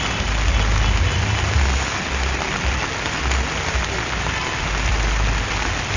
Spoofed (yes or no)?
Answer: no